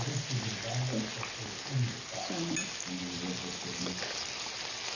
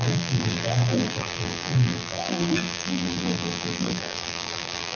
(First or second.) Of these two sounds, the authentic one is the first